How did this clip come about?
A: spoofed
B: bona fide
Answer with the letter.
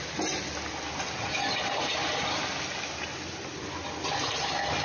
B